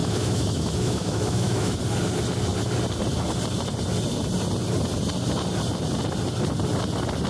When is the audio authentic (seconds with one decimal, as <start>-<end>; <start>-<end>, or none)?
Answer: 1.8-7.3